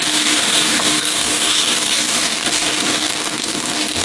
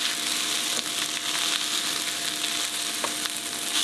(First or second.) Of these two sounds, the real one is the second